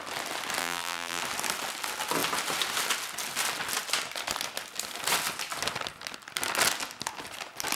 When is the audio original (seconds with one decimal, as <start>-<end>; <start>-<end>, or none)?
0.0-0.6; 1.2-7.8